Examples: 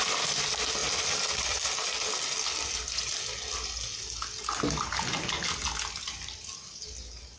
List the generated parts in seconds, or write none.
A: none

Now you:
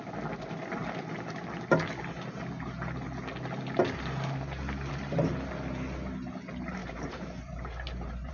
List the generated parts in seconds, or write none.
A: 6.8-8.3 (vocoder, BigVGAN v2)

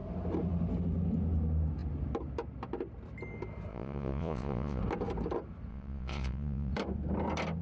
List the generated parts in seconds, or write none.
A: 3.7-4.8 (vocoder, Vocos); 5.7-6.7